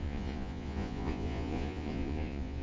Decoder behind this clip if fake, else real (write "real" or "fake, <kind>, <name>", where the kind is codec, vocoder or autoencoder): fake, vocoder, Vocos